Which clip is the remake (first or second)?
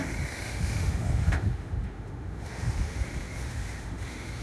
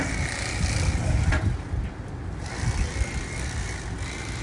first